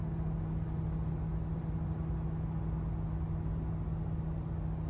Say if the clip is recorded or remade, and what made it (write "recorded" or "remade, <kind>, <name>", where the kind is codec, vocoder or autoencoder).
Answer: recorded